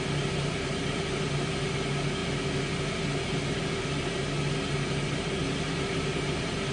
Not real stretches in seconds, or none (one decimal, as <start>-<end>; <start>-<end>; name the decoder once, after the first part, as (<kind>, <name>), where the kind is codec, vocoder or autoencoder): none